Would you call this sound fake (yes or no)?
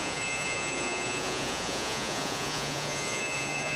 yes